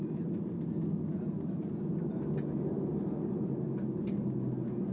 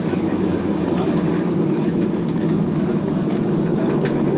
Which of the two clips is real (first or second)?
first